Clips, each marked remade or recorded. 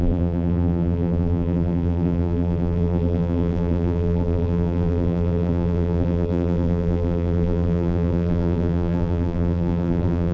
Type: remade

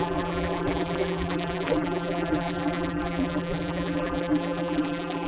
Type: remade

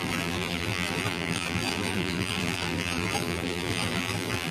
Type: remade